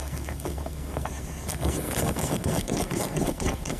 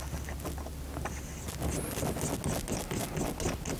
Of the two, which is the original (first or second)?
second